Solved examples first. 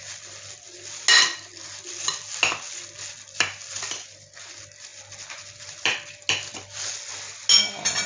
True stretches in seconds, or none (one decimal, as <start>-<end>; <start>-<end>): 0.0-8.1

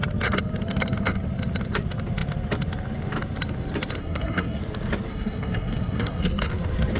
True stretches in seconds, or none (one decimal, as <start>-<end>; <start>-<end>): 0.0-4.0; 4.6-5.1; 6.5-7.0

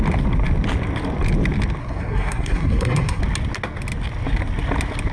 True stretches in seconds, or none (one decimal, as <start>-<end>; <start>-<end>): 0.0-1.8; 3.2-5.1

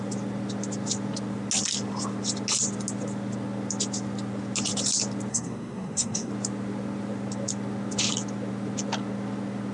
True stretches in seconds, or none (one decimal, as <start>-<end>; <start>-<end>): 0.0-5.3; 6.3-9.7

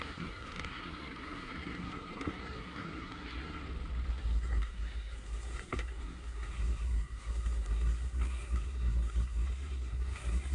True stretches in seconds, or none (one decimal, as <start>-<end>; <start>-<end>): 3.6-4.1

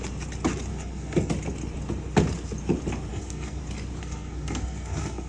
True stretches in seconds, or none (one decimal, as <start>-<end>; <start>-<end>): 0.0-0.7; 1.3-3.1; 3.6-4.0

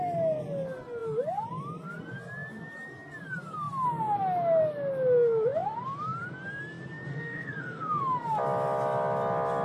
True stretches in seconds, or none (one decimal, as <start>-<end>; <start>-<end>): 0.0-7.1; 8.0-9.6

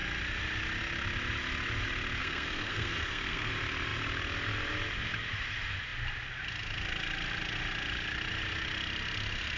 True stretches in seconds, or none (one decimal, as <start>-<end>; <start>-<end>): 0.0-2.2; 3.5-9.6